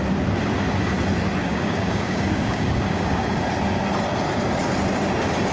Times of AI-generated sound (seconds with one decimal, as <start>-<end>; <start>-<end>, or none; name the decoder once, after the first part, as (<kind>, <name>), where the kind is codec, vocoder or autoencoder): 1.4-3.4 (codec, DAC)